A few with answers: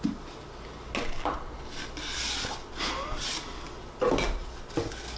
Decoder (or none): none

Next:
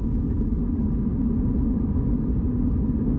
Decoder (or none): none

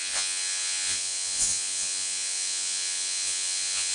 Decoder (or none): vocoder, Vocos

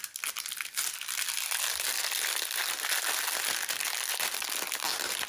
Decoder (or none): none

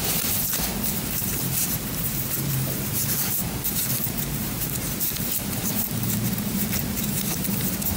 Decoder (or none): vocoder, BigVGAN v2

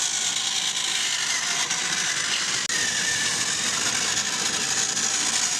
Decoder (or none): none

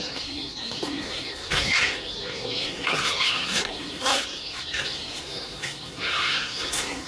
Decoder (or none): codec, SNAC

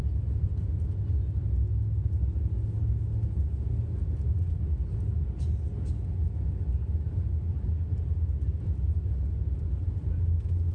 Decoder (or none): none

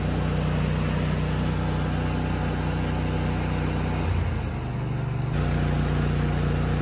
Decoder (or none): none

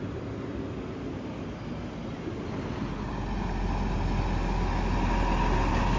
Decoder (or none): none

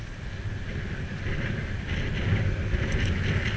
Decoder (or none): none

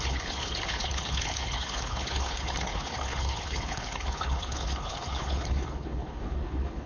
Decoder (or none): codec, HILCodec